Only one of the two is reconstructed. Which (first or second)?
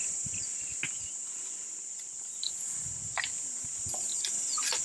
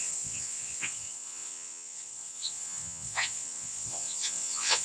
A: second